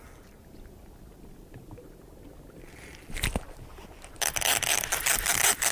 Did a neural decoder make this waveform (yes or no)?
no